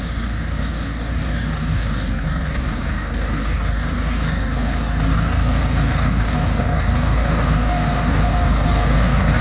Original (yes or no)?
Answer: no